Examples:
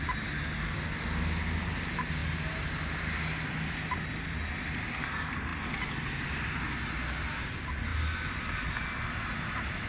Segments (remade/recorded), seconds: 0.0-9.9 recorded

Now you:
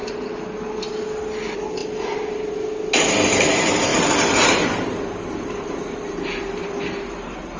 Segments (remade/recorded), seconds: 0.0-1.8 recorded; 1.8-2.5 remade; 2.5-3.9 recorded; 3.9-7.6 remade